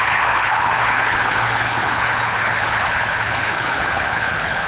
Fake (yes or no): yes